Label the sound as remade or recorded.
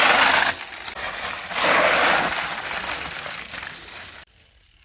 recorded